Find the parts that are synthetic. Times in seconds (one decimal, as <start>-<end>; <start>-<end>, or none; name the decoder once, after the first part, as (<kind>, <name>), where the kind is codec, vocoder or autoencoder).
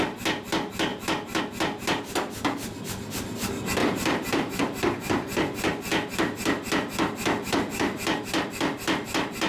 3.8-4.6 (vocoder, BigVGAN v2)